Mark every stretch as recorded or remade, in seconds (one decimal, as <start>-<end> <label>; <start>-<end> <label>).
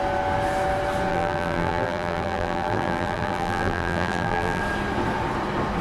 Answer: 0.0-1.1 recorded; 1.1-4.6 remade; 4.6-5.8 recorded